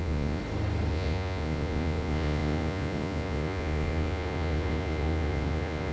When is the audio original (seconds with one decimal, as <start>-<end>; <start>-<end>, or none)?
0.4-0.9